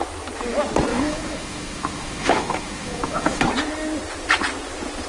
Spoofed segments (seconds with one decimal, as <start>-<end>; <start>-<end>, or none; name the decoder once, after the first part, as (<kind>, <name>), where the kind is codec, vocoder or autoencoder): 0.9-3.4 (autoencoder, DAC-VAE)